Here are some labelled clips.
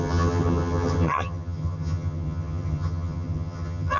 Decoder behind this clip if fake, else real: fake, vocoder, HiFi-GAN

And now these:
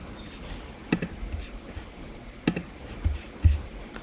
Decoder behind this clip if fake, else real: real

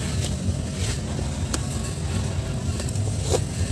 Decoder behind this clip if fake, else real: real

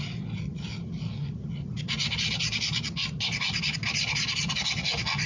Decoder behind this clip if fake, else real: real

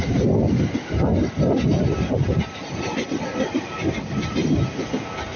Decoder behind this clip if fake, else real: real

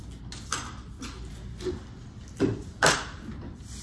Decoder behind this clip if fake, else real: real